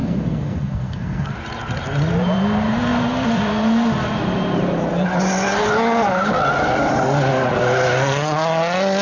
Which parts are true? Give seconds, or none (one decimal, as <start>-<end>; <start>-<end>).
1.3-9.0